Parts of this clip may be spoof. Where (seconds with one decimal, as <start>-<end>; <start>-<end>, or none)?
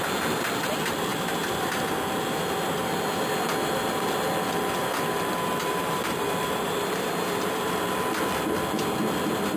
1.1-1.9; 4.8-7.1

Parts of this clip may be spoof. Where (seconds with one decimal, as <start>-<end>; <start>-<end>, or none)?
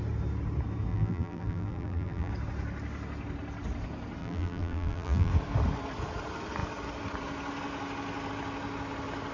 0.9-2.3; 4.2-5.3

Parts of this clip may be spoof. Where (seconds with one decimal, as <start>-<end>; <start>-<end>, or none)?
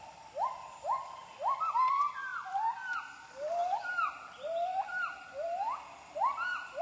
0.0-1.2; 1.9-6.8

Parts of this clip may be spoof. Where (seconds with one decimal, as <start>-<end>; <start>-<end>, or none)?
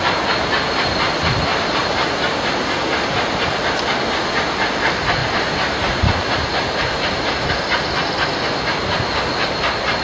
1.5-2.5; 5.2-7.5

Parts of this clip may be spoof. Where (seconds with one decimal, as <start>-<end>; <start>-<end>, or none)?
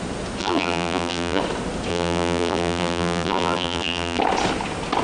0.4-1.4; 1.9-4.2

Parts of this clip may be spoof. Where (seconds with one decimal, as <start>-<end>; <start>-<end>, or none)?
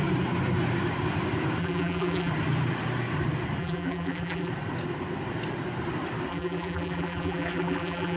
1.6-2.3; 3.6-4.5; 6.3-8.2